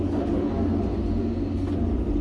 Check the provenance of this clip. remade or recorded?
recorded